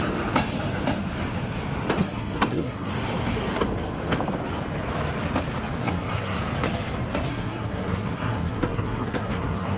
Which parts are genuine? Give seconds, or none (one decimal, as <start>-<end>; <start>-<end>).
0.0-2.0; 2.9-5.8; 6.4-7.3